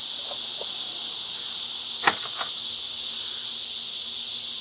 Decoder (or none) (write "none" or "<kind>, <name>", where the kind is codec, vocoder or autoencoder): none